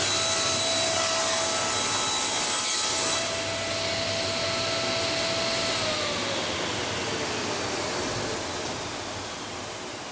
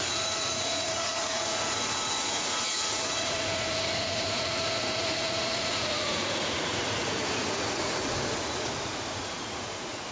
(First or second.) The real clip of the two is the first